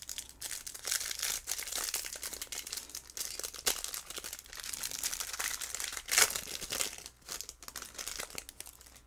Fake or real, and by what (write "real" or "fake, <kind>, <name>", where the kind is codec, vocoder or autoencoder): real